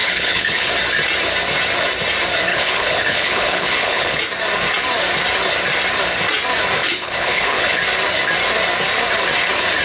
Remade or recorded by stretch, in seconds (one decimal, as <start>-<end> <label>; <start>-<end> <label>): 0.0-0.7 remade; 0.7-2.5 recorded; 2.5-4.2 remade; 4.2-6.8 recorded; 6.8-7.8 remade; 7.8-9.8 recorded